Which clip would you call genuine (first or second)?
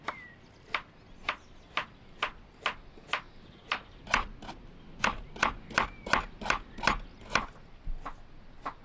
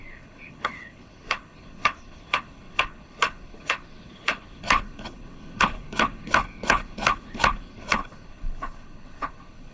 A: first